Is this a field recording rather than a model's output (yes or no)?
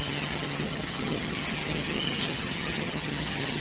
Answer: no